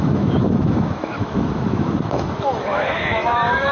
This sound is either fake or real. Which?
fake